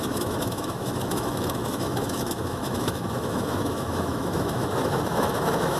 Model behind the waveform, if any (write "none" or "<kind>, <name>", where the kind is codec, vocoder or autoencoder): autoencoder, DAC-VAE